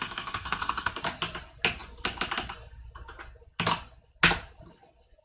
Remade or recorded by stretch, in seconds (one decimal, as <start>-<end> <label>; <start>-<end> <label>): 0.0-0.9 remade; 0.9-5.2 recorded